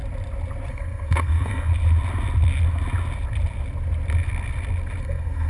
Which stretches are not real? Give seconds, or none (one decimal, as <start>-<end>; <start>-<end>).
0.7-1.7; 5.0-5.5